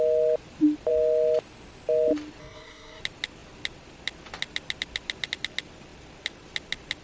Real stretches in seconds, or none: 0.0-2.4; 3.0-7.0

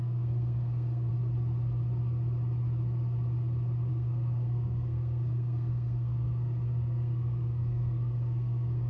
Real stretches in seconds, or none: 1.1-3.9

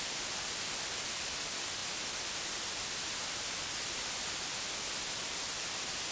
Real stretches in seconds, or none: 0.0-6.1

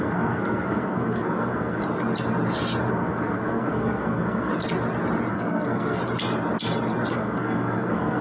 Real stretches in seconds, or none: 1.8-2.9; 4.5-5.3; 6.0-7.1

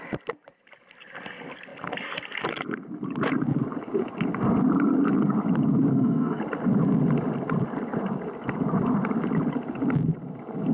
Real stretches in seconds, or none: 0.0-5.9; 6.4-10.7

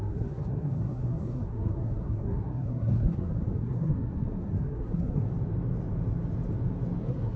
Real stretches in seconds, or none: 5.3-7.0